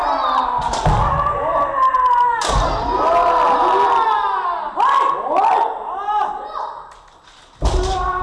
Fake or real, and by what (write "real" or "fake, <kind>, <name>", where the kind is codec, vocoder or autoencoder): real